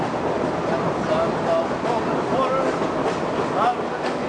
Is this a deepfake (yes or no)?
no